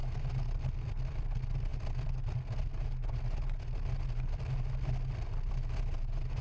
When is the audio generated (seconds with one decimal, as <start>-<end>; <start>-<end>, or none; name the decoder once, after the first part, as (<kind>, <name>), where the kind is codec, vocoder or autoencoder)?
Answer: none